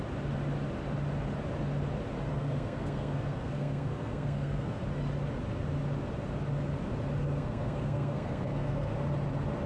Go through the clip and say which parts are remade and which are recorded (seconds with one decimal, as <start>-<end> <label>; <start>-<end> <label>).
0.0-2.3 recorded; 2.3-4.8 remade; 4.8-7.2 recorded; 7.2-8.9 remade; 8.9-9.7 recorded